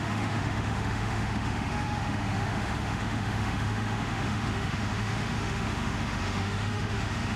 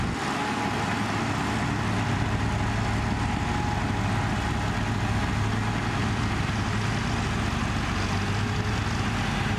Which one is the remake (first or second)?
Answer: first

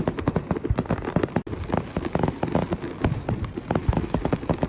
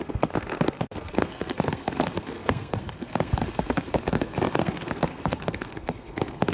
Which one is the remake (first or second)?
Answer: second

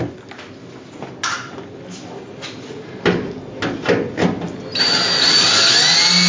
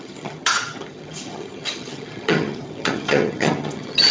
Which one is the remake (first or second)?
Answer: second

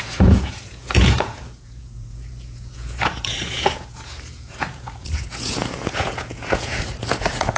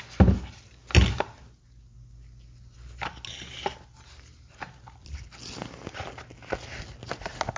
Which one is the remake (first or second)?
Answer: first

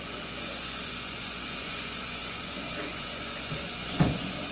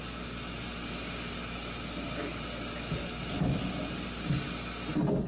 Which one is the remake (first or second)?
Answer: first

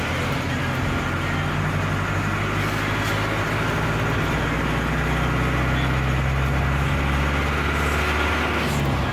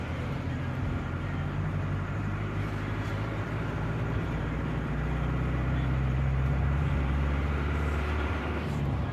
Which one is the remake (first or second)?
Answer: second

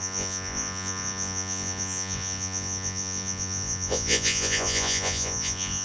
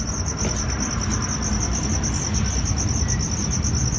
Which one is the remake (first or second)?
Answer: first